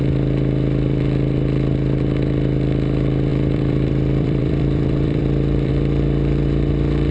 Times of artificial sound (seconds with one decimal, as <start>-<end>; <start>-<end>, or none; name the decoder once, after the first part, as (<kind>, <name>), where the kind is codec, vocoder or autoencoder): 3.3-5.7 (vocoder, BigVGAN v2)

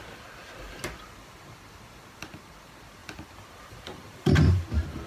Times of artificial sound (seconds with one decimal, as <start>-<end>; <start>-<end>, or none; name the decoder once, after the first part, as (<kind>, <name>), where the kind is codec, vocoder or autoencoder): 3.0-4.6 (vocoder, BigVGAN v2)

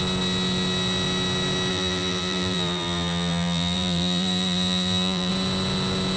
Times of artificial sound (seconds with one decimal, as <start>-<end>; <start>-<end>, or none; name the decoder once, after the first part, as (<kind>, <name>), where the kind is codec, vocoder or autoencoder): 1.7-5.3 (vocoder, BigVGAN v2)

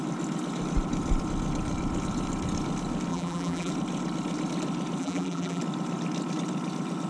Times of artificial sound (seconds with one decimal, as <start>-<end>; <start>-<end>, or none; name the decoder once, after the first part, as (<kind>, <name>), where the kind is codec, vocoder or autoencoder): 3.1-3.7 (vocoder, BigVGAN v2); 5.0-5.6

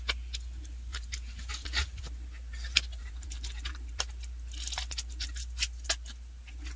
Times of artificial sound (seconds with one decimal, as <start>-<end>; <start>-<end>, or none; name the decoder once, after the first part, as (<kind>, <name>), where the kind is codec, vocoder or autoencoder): 0.9-1.5 (vocoder, BigVGAN v2); 3.0-3.9

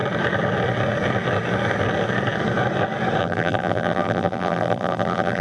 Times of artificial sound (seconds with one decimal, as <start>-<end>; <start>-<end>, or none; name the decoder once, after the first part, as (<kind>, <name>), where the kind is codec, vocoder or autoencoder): 3.2-5.4 (vocoder, BigVGAN v2)